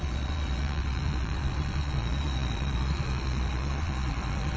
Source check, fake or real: fake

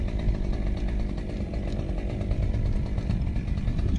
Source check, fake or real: real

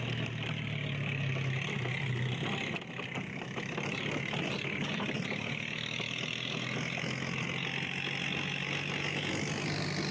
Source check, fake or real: real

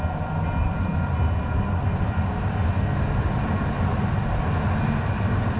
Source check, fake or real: real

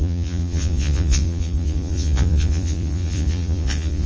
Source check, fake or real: fake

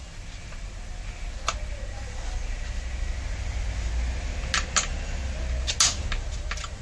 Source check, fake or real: real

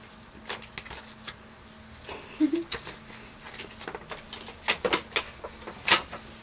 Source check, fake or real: real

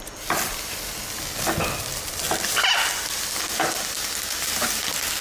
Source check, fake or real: real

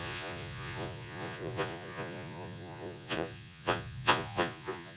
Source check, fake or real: fake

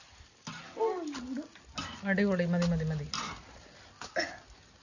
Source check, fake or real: real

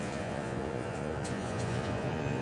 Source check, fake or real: fake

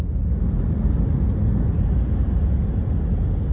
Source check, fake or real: real